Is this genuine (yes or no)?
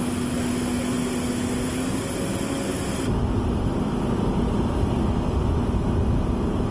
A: yes